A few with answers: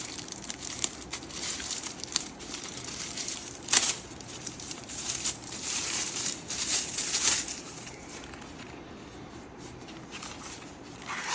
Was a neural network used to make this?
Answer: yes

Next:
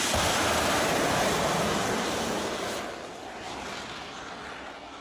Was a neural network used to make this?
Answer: no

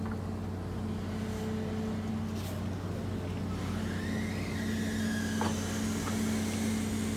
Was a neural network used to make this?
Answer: no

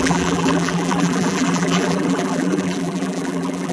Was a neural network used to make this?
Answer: yes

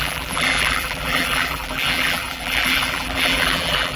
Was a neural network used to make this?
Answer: yes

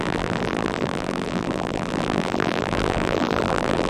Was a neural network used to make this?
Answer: yes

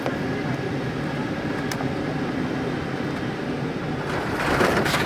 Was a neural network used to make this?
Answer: no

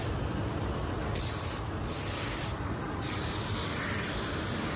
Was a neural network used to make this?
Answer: yes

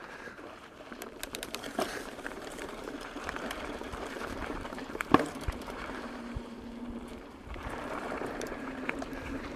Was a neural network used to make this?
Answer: yes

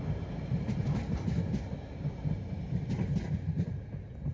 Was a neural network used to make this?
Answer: no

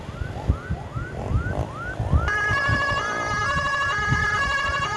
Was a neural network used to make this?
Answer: no